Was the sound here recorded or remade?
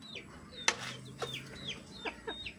recorded